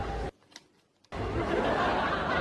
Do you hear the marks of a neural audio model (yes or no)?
no